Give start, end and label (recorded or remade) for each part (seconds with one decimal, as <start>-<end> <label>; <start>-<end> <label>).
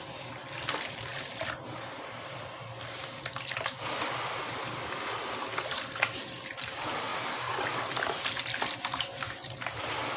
0.0-10.2 recorded